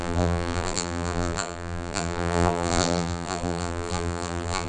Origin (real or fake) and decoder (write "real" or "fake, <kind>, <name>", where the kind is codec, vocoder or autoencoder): fake, vocoder, BigVGAN v2